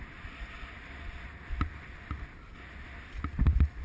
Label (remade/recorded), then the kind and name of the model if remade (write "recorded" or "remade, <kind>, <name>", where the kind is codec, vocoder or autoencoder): recorded